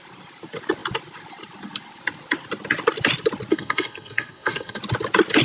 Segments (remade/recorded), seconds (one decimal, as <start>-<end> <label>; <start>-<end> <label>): 0.0-3.5 recorded; 3.5-4.8 remade; 4.8-5.4 recorded